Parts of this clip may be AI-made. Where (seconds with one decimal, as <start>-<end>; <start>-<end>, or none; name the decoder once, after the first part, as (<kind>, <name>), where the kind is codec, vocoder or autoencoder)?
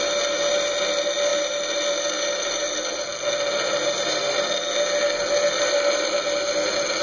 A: none